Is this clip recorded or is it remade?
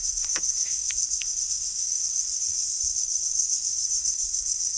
remade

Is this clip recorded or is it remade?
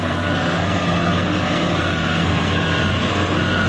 remade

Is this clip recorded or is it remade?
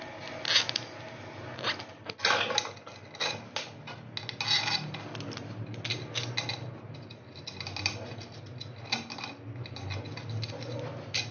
recorded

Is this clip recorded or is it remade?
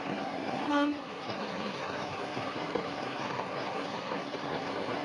remade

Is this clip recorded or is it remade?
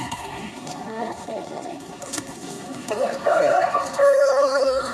remade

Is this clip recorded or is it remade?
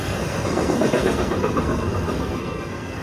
remade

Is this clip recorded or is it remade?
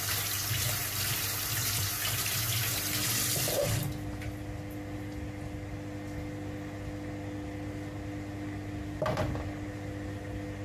recorded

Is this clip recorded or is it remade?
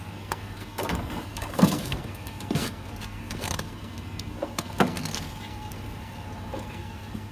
remade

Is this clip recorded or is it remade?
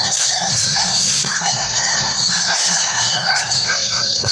remade